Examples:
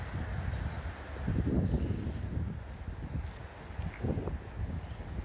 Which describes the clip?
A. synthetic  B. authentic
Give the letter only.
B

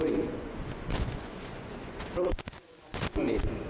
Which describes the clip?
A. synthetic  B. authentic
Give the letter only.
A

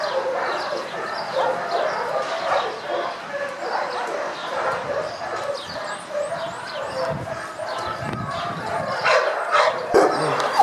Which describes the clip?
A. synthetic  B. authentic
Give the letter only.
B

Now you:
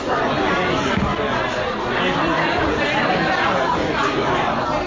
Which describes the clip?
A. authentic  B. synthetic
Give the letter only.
A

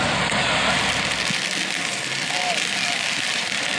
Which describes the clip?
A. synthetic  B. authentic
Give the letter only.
B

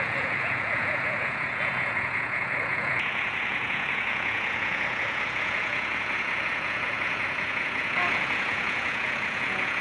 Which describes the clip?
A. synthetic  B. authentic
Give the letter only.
A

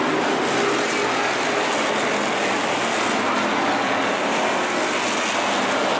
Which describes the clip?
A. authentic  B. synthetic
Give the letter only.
A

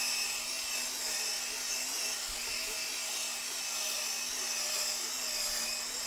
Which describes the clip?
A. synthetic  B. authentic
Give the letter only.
B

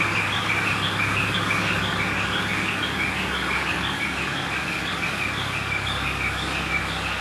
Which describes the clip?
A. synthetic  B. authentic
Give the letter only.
A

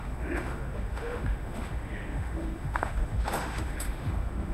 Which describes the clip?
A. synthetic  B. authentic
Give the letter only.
A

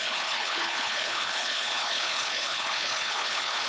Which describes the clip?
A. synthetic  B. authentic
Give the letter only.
A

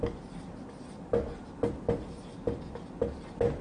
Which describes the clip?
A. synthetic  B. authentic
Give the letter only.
B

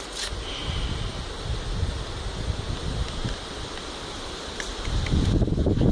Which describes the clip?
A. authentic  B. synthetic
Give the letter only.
A